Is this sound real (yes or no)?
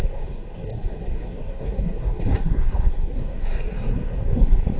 no